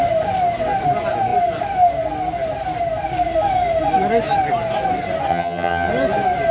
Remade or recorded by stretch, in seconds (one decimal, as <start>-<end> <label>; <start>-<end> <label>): 0.0-5.3 recorded; 5.3-5.9 remade; 5.9-6.5 recorded